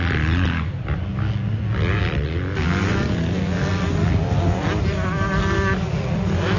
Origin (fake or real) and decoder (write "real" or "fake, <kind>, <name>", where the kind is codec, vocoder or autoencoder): real